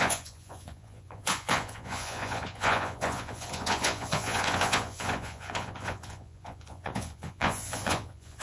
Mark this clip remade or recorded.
remade